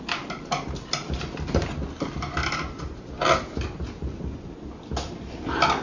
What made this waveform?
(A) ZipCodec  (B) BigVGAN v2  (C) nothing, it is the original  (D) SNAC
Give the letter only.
C